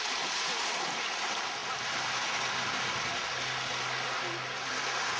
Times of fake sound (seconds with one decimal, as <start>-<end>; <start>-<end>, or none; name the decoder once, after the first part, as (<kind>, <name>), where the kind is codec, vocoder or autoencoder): none